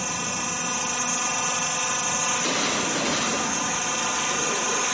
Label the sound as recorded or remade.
recorded